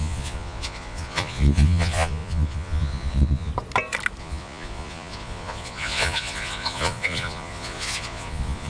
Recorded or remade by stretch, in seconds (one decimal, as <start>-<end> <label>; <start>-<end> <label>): 0.0-3.5 remade; 3.5-4.2 recorded; 4.2-8.7 remade